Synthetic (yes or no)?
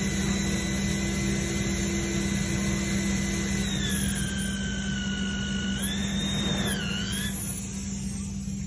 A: no